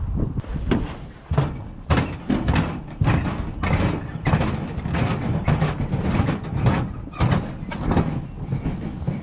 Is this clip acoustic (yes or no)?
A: yes